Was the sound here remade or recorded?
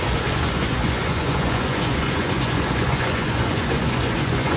remade